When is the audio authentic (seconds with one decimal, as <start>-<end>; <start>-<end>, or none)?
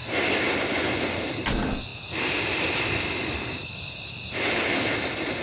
0.0-5.4